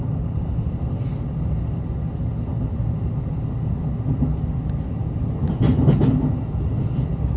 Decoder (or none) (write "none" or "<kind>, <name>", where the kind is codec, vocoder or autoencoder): none